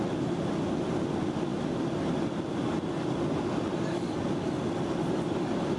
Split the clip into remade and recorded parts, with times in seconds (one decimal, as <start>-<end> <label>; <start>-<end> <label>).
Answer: 0.0-5.8 recorded